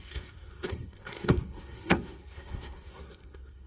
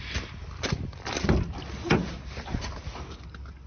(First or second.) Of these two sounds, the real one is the second